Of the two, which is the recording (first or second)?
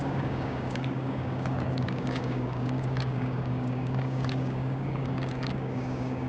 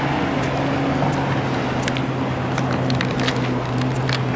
second